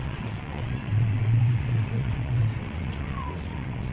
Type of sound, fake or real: fake